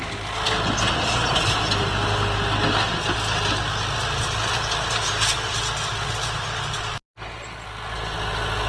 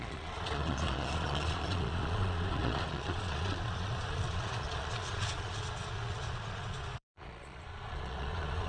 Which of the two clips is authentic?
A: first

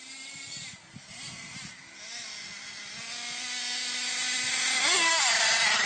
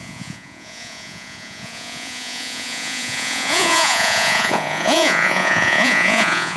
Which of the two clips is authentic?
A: first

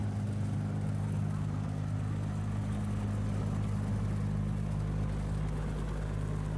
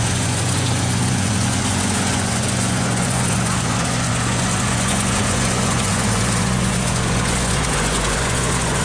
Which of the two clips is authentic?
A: first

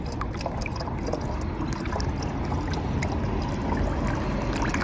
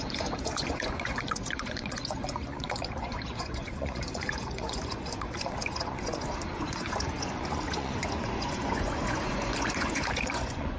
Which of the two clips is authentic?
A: first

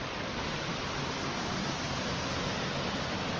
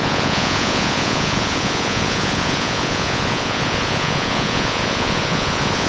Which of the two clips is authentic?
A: first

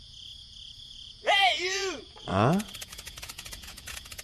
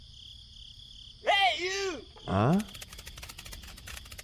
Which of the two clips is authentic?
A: second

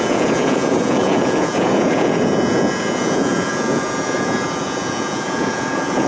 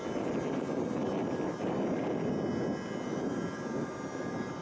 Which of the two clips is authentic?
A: second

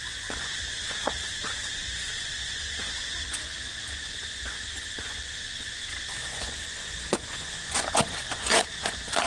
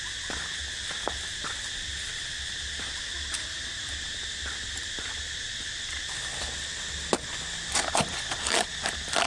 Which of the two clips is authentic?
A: second